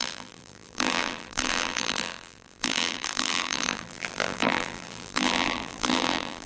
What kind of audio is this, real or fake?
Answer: fake